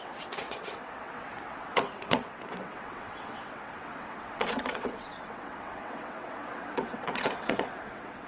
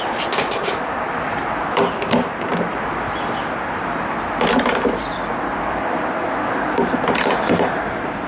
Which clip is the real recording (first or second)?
second